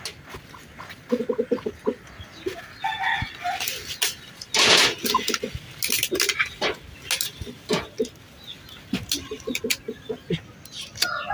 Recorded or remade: recorded